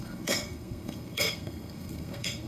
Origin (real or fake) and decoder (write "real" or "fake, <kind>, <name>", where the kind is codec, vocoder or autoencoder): fake, codec, SNAC